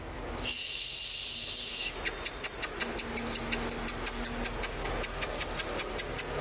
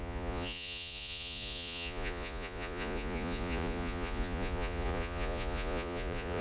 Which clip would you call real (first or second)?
first